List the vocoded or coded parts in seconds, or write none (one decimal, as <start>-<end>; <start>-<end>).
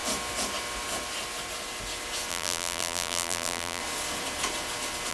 2.3-3.8